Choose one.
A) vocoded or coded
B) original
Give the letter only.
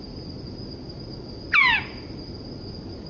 B